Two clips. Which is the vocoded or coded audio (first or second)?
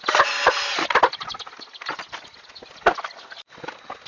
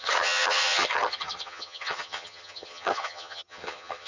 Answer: second